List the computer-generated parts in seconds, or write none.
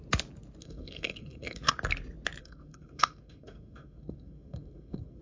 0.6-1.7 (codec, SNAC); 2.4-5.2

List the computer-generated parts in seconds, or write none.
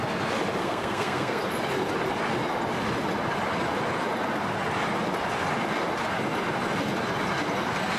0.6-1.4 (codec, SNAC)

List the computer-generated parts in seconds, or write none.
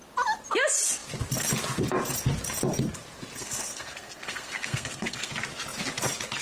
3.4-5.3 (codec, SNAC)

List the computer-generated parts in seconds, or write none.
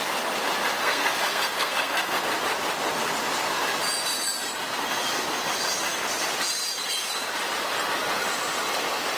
0.8-2.2 (codec, SNAC)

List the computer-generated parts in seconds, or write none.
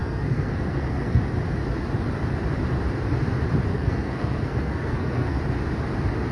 0.0-1.2 (codec, SNAC); 3.7-5.4